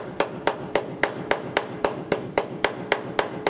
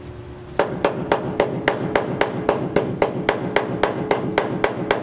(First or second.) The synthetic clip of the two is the first